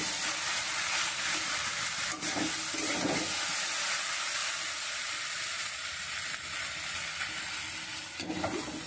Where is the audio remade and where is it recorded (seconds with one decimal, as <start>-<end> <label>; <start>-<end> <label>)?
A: 0.0-8.9 recorded